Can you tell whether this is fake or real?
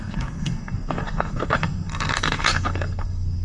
fake